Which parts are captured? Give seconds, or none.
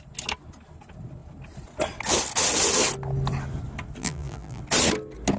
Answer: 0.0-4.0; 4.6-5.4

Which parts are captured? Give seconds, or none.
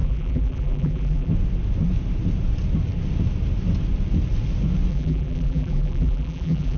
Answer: 1.3-4.9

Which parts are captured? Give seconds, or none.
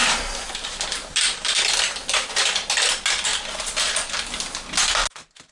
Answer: 0.7-3.3; 4.1-5.5